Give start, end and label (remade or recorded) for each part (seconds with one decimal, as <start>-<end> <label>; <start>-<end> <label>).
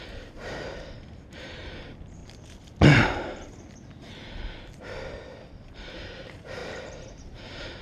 0.0-2.2 remade; 2.2-5.9 recorded; 5.9-7.8 remade